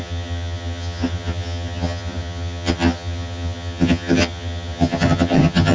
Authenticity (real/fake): fake